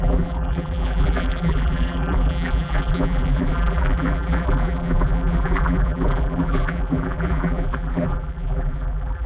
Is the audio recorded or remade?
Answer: remade